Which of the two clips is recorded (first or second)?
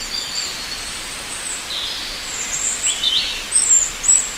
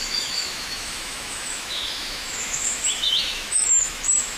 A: first